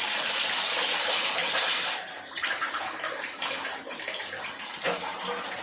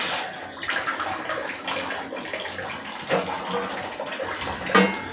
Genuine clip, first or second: second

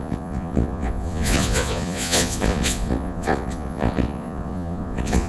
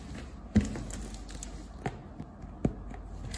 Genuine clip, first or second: second